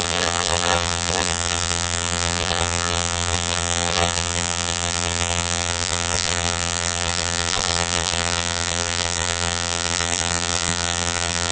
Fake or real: fake